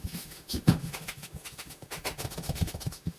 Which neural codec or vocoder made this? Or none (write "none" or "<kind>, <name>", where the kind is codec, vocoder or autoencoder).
autoencoder, DAC-VAE